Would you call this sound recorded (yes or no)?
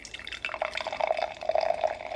yes